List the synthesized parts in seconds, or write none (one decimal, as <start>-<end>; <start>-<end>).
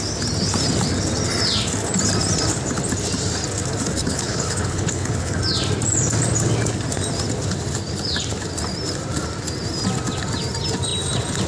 4.0-5.4